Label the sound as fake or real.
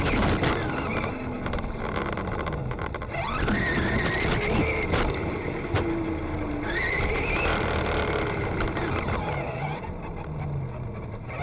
real